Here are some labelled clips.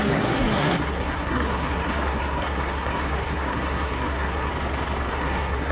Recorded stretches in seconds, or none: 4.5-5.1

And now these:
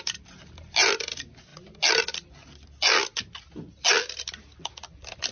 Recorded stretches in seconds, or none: 0.0-5.3

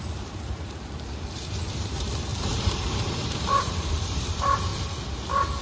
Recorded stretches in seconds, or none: 4.7-5.6

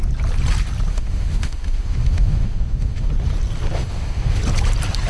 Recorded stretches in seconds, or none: 0.0-0.9; 3.1-3.8; 4.4-5.1

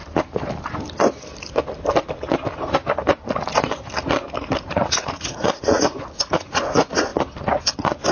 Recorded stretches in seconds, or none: 0.0-4.6; 7.1-8.1

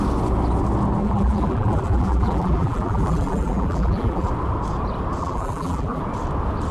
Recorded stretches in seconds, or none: 0.0-1.0; 4.3-5.2; 6.0-6.7

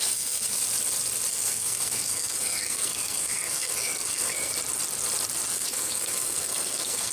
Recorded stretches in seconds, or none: 0.6-1.3; 4.5-5.5